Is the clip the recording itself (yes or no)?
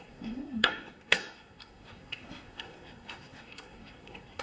no